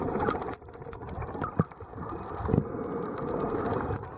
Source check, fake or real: real